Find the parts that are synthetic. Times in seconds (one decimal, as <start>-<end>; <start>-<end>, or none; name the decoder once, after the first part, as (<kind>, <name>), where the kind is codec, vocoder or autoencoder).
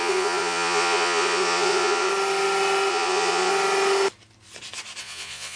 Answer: 0.0-2.1 (vocoder, Vocos); 2.9-3.5; 5.0-5.6